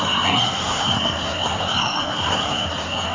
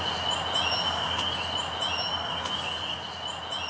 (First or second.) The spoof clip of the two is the first